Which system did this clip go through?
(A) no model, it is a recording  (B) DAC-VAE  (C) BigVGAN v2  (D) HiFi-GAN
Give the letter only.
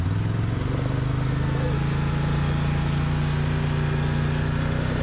A